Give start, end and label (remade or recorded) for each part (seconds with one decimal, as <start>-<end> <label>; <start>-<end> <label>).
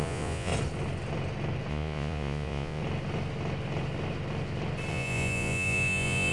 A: 0.0-0.5 remade; 0.5-1.7 recorded; 1.7-2.8 remade; 2.8-4.9 recorded; 4.9-6.3 remade